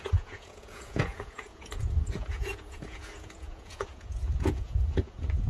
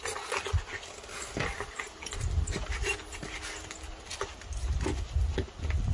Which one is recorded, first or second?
second